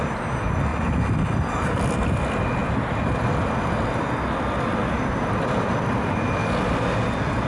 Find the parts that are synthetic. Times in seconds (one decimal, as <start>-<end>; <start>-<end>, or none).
4.8-6.4